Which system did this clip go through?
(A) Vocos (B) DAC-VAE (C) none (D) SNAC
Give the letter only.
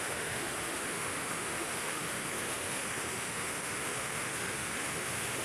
B